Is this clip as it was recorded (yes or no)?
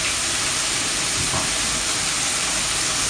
yes